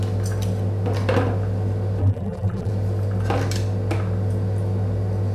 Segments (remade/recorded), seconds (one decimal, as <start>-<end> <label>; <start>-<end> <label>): 0.0-2.0 recorded; 2.0-2.7 remade; 2.7-5.3 recorded